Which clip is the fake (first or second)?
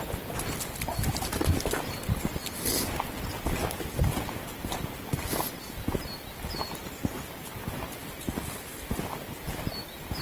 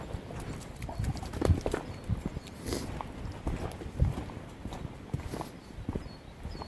second